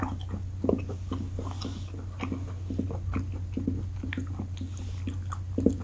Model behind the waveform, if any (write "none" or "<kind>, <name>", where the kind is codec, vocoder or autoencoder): none